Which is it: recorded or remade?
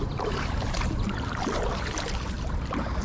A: remade